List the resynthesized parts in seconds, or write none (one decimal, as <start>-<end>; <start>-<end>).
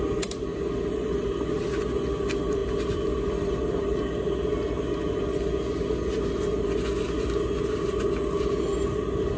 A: none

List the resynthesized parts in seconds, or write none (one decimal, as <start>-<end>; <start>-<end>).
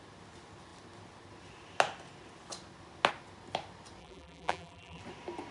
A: 4.0-5.0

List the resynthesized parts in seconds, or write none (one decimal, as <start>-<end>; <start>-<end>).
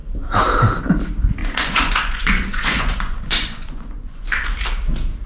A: 1.4-4.6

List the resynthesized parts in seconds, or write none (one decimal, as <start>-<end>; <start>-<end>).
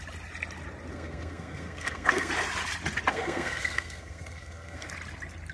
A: 0.9-2.3; 3.1-4.9